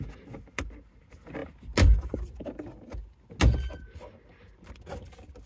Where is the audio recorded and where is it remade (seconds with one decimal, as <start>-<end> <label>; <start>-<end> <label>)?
0.0-5.5 recorded